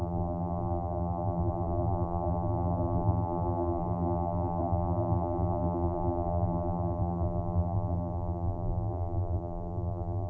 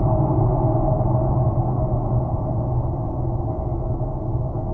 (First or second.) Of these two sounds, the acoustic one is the second